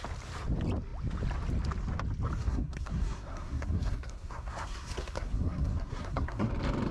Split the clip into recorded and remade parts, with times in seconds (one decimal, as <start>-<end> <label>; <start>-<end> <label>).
0.0-2.4 recorded; 2.4-6.5 remade; 6.5-6.9 recorded